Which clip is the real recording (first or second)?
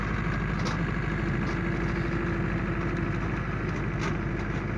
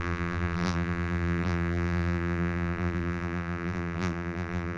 first